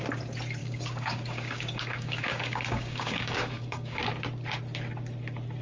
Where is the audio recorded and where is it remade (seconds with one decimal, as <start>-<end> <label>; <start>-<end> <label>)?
0.0-0.6 recorded; 0.6-4.0 remade; 4.0-5.6 recorded